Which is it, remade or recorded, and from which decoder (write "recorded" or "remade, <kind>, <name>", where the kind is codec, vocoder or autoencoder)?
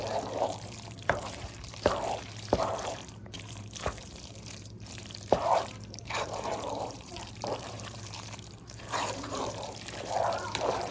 remade, vocoder, BigVGAN v2